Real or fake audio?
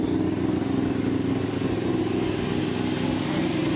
real